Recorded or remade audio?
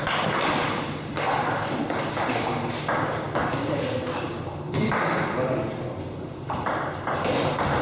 recorded